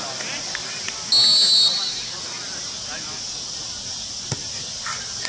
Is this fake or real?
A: real